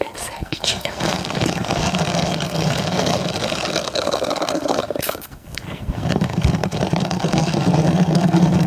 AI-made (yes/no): yes